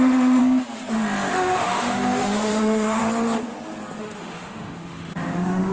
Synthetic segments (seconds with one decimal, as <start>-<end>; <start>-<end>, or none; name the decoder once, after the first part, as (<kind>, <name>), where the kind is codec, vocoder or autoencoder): 0.0-0.4 (autoencoder, DAC-VAE); 1.3-3.0; 4.0-5.7